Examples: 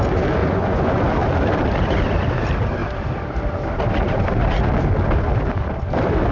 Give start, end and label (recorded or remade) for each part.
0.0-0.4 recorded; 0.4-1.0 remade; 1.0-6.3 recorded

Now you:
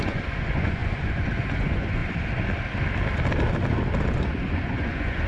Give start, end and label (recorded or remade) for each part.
0.0-2.0 remade; 2.0-4.1 recorded; 4.1-5.3 remade

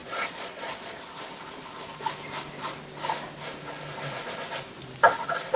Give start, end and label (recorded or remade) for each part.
0.0-1.0 remade; 1.0-5.6 recorded

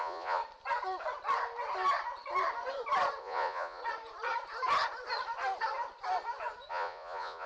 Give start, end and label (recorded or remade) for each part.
0.0-0.4 remade; 0.4-3.2 recorded; 3.2-3.8 remade; 3.8-6.7 recorded; 6.7-7.5 remade